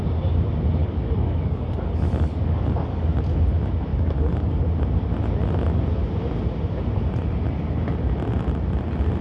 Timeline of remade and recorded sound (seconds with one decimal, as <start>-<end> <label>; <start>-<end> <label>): 0.0-0.8 recorded; 0.8-3.2 remade; 3.2-3.9 recorded; 3.9-4.6 remade; 4.6-9.2 recorded